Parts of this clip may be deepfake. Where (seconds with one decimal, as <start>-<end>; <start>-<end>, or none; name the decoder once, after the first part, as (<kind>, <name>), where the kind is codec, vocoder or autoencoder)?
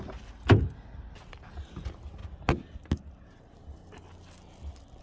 none